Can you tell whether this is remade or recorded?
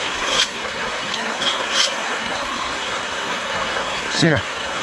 remade